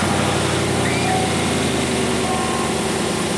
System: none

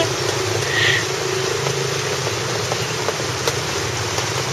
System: none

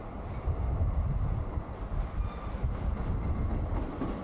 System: none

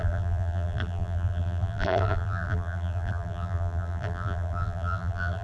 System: vocoder, BigVGAN v2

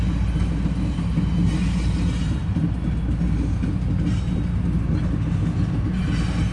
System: none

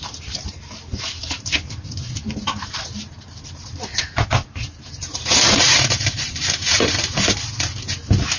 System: vocoder, BigVGAN v2